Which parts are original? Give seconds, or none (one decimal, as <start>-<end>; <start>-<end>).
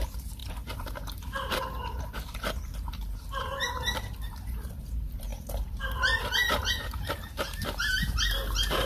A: none